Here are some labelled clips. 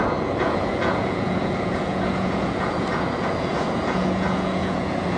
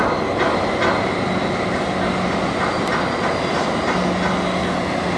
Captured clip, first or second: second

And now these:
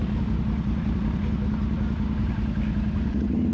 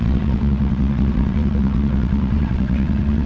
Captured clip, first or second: first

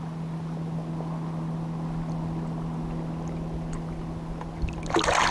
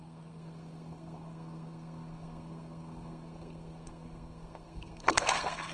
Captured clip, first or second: first